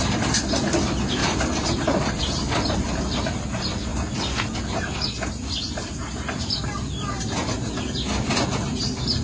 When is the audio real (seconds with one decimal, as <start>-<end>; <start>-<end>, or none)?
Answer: 0.0-1.2; 3.4-9.2